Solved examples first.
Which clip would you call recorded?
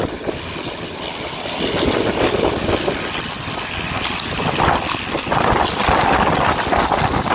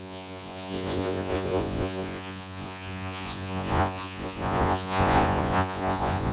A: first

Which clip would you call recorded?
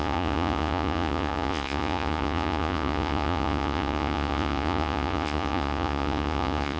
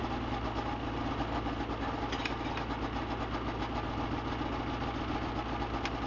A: second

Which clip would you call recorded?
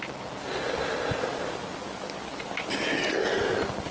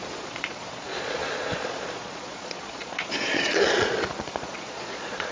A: first